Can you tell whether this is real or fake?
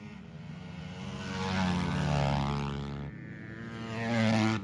real